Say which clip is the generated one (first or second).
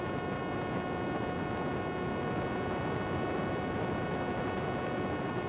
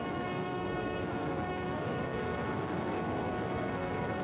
second